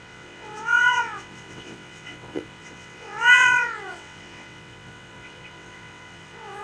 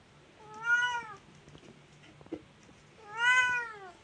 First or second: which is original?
second